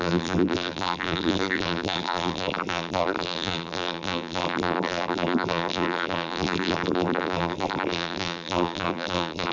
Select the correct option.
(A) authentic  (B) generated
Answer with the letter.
B